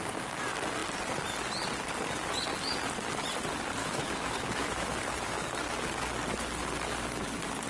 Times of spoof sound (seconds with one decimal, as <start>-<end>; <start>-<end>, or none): 3.8-5.6